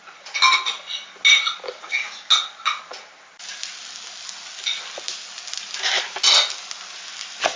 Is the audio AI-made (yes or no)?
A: no